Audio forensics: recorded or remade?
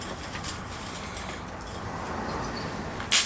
recorded